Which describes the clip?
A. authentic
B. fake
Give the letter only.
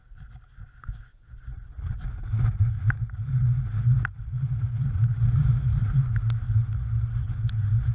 A